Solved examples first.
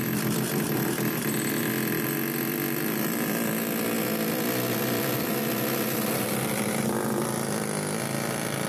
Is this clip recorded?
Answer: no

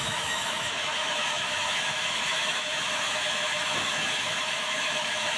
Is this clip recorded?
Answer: no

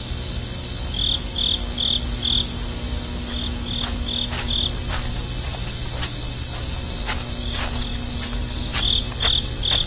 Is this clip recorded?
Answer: yes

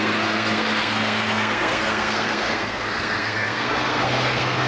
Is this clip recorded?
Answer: no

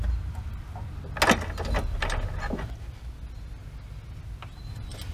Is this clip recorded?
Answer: yes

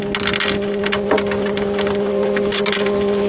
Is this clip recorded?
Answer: yes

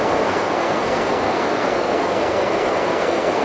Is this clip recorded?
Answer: no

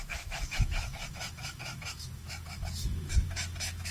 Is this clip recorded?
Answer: no